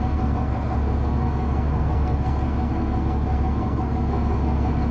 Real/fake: fake